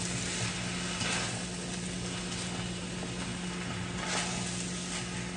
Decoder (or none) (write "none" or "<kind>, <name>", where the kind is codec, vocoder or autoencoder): none